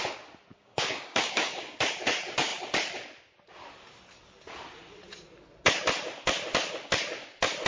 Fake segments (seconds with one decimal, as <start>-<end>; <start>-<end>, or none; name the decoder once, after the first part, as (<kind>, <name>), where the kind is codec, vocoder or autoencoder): 0.5-1.8 (codec, DAC)

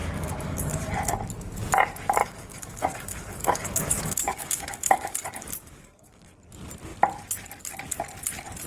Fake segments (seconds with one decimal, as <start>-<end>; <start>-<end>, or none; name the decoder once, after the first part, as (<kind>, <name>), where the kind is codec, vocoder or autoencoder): 0.0-0.9 (codec, DAC); 2.2-6.3

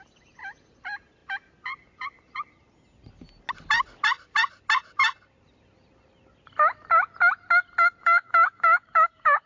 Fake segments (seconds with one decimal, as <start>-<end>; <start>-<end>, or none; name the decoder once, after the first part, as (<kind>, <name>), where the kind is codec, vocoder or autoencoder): 8.0-9.5 (codec, DAC)

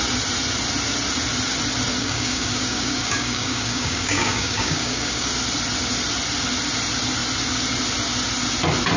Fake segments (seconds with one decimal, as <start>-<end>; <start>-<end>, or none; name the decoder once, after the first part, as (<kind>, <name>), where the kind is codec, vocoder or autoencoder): 2.0-5.3 (codec, DAC)